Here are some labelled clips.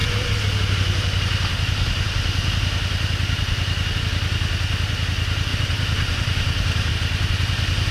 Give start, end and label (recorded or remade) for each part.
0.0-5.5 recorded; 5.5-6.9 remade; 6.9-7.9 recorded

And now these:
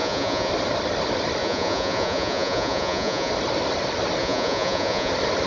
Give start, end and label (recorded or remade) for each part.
0.0-0.5 remade; 0.5-1.4 recorded; 1.4-3.3 remade; 3.3-4.2 recorded; 4.2-5.1 remade; 5.1-5.5 recorded

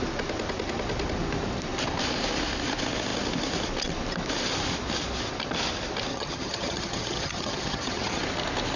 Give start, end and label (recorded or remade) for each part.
0.0-6.1 recorded; 6.1-8.2 remade; 8.2-8.8 recorded

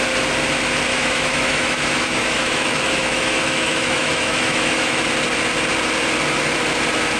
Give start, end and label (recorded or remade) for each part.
0.0-0.9 recorded; 0.9-5.0 remade; 5.0-7.2 recorded